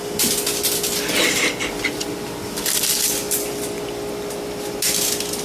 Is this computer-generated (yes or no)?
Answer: no